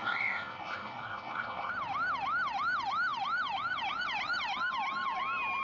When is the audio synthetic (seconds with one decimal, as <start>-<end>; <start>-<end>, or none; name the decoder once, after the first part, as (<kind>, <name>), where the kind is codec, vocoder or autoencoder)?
0.0-1.7 (codec, SNAC)